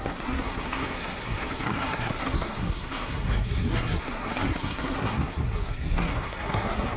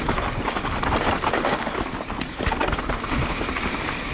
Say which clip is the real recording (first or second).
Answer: second